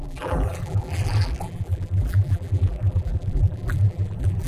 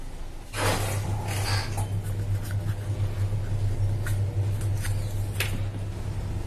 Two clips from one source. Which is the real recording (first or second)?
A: second